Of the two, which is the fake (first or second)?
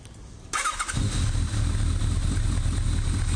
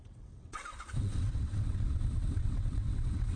second